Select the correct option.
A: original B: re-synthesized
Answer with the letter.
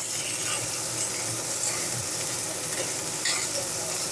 A